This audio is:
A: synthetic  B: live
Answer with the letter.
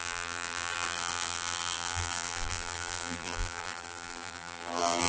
A